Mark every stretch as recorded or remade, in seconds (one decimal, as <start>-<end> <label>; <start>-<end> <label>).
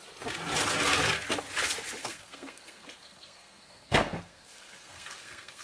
0.0-2.0 recorded; 2.0-5.6 remade